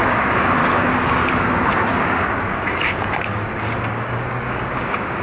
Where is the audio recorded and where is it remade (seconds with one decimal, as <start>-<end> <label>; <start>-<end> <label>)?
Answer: 0.0-0.6 remade; 0.6-1.9 recorded; 1.9-5.2 remade

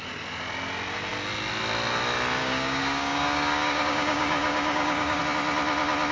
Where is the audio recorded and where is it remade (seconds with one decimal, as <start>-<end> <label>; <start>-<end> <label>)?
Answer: 0.0-2.4 recorded; 2.4-5.2 remade; 5.2-6.1 recorded

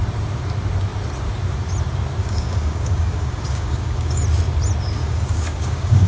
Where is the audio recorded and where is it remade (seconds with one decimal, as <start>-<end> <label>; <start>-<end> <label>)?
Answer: 0.0-2.2 recorded; 2.2-4.2 remade; 4.2-5.0 recorded; 5.0-6.1 remade

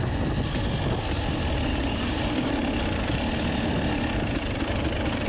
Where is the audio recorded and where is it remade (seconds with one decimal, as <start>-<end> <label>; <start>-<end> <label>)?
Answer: 0.0-1.7 recorded; 1.7-2.2 remade; 2.2-5.3 recorded

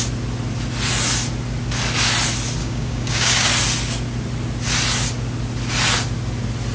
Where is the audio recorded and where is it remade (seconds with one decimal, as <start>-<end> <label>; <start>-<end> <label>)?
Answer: 0.0-2.6 recorded; 2.6-3.5 remade; 3.5-6.7 recorded

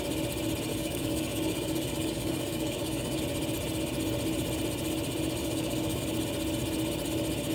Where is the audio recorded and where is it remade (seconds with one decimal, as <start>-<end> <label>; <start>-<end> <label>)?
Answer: 0.0-0.7 recorded; 0.7-3.2 remade; 3.2-5.4 recorded; 5.4-6.0 remade; 6.0-7.5 recorded